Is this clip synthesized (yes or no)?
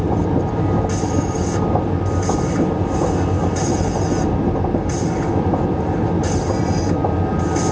no